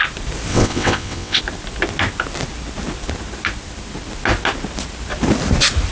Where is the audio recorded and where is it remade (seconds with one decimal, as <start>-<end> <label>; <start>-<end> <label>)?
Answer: 0.0-0.5 recorded; 0.5-1.4 remade; 1.4-5.9 recorded